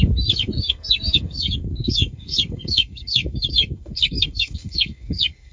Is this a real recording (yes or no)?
no